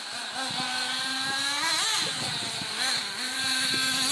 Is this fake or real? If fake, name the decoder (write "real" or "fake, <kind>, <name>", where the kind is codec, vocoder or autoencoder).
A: real